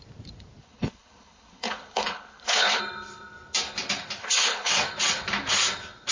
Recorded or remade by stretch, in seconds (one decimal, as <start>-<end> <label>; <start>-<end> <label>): 0.0-0.6 recorded; 0.6-2.8 remade; 2.8-4.2 recorded; 4.2-4.7 remade; 4.7-6.1 recorded